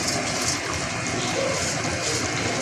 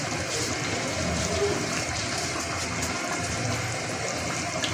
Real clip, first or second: first